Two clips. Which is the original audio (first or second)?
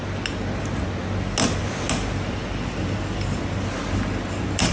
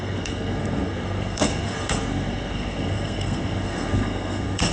first